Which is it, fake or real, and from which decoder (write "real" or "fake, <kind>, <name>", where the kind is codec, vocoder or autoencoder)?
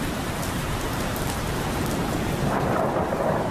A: fake, vocoder, BigVGAN v2